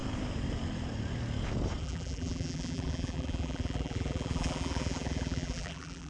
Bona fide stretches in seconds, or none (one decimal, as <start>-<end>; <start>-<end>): 0.0-1.8